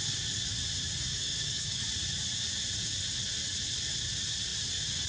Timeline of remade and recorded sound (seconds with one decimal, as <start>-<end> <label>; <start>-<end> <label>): 0.0-1.1 recorded; 1.1-1.8 remade; 1.8-5.1 recorded